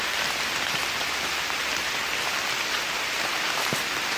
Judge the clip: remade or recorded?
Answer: recorded